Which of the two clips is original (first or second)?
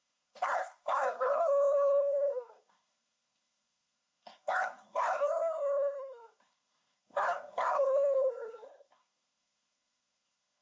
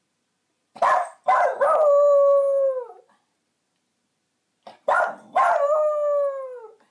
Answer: second